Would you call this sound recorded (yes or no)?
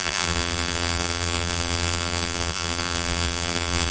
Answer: no